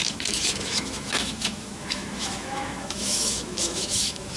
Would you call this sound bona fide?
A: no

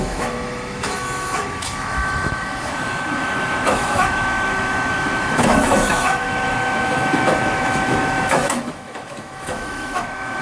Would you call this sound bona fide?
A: no